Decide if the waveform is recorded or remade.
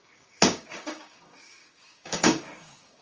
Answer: remade